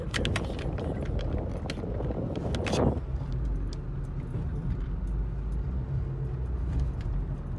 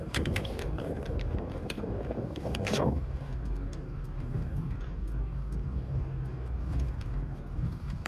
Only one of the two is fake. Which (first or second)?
second